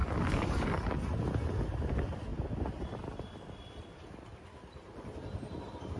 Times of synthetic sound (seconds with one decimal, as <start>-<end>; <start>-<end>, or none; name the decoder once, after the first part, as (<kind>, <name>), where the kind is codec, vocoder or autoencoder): 0.0-0.9 (codec, DAC)